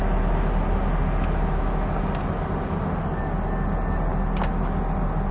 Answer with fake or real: real